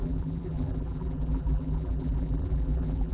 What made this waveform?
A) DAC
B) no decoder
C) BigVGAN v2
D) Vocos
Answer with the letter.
C